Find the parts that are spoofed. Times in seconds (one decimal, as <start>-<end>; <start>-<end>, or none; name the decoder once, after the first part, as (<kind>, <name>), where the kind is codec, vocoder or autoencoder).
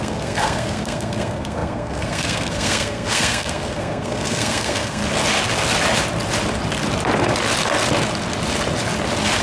0.0-5.0 (codec, SNAC)